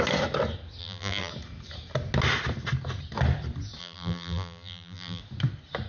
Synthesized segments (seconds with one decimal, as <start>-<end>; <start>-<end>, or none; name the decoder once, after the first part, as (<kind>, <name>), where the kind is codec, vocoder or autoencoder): 0.8-1.3 (vocoder, BigVGAN v2); 3.8-5.2